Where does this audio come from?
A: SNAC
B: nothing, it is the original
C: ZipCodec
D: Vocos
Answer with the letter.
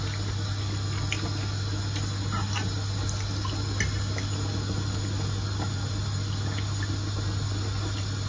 B